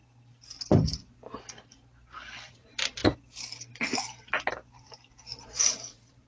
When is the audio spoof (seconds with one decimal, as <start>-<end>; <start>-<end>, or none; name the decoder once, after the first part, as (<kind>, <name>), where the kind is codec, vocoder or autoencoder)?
2.5-3.0 (vocoder, BigVGAN v2); 4.5-6.3